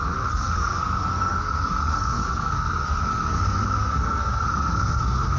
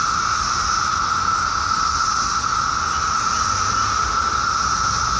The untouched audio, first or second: second